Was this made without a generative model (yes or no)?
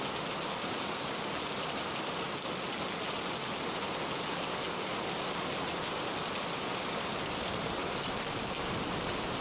yes